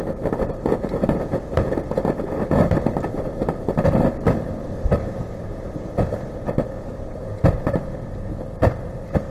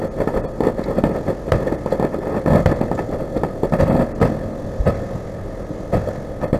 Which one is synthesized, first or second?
first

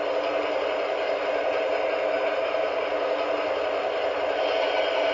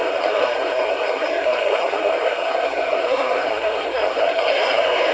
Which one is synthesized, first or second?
second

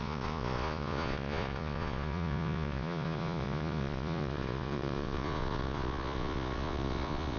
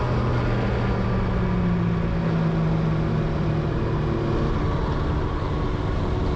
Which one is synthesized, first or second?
first